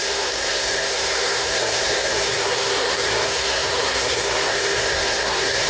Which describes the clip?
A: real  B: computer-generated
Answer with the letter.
B